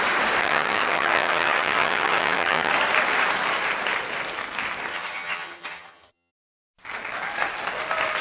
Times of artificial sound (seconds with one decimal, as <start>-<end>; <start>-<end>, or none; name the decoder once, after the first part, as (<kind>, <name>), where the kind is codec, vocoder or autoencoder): 0.4-2.7 (vocoder, HiFi-GAN); 4.9-6.3